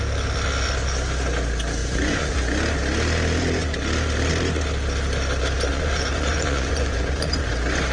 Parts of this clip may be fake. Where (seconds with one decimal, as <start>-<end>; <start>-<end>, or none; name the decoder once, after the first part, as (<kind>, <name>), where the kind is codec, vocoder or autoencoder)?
1.8-2.4 (vocoder, Vocos); 5.7-7.5